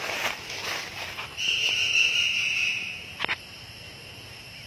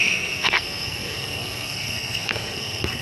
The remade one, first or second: second